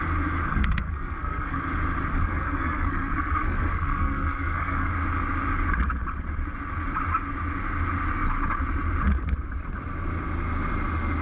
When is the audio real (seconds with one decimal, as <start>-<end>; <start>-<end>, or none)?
0.0-0.5; 1.6-2.1; 4.9-11.2